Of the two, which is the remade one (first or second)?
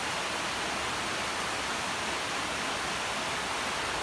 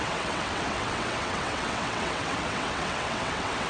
second